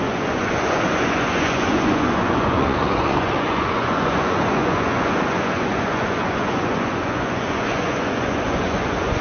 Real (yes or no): no